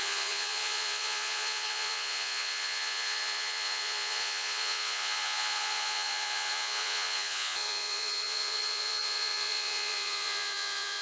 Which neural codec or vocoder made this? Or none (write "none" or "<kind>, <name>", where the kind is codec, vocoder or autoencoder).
vocoder, Vocos